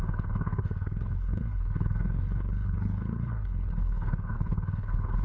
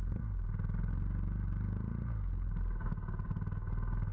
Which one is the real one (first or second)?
second